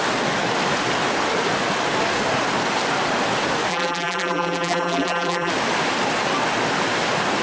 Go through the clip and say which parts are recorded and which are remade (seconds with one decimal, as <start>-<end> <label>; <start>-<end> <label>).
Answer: 0.0-3.7 recorded; 3.7-5.5 remade; 5.5-7.4 recorded